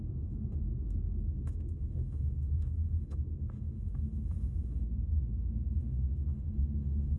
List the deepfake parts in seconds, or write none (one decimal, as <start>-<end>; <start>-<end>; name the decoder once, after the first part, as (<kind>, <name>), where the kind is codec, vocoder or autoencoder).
0.0-7.2 (autoencoder, DAC-VAE)